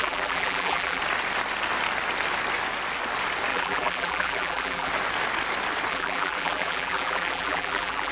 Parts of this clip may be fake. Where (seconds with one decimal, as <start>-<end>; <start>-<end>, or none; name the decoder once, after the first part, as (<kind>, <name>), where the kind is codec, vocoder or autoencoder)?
0.0-1.0 (vocoder, BigVGAN v2); 3.5-4.9; 5.9-8.1